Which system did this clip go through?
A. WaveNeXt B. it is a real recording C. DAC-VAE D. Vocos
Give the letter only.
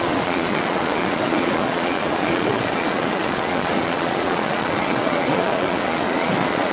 D